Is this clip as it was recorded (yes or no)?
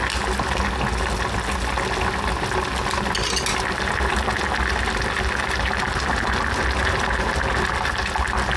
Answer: yes